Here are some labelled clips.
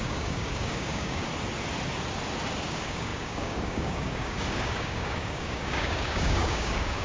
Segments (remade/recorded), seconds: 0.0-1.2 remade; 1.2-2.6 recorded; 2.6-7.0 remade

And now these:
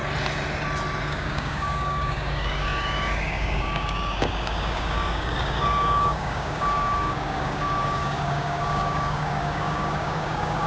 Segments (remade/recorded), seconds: 0.0-1.0 recorded; 1.0-10.7 remade